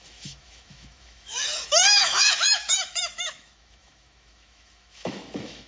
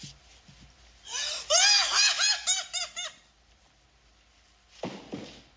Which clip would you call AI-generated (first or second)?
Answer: first